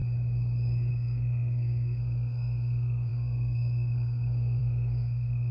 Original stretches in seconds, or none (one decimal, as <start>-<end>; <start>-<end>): 0.0-0.9

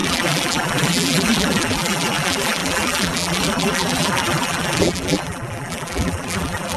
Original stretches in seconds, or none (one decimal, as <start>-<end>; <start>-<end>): none

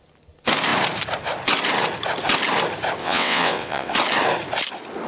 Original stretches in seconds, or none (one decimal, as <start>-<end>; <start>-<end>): 0.0-3.0; 3.9-5.1

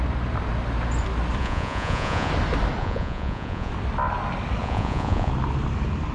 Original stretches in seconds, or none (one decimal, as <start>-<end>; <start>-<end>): 0.0-1.4; 2.3-2.8; 3.7-4.6; 5.3-6.1

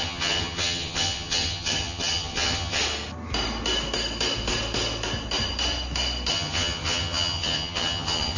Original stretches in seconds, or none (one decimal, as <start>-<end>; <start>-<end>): 2.8-6.3